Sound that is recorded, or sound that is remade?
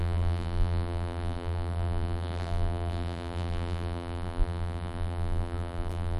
remade